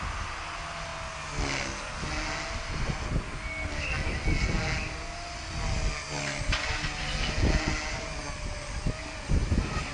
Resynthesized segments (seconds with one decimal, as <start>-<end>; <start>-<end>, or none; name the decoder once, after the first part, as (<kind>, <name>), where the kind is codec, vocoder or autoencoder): none